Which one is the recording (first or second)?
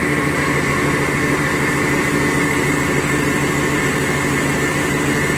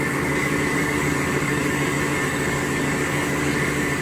first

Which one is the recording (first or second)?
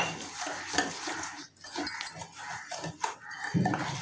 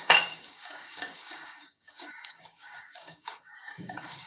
first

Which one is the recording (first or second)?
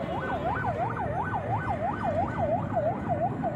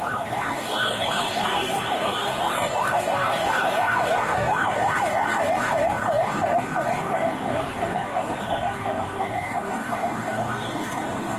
first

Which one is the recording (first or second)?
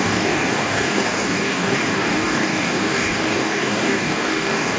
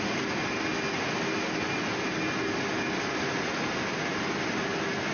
second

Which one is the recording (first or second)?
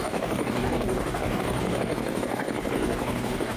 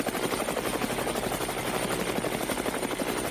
second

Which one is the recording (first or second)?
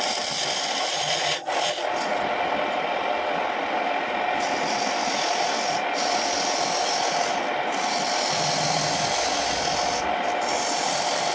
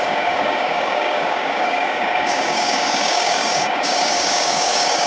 first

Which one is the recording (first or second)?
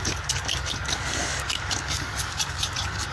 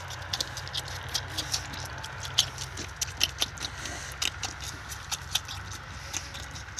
second